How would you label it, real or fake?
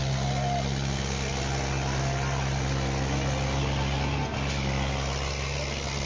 real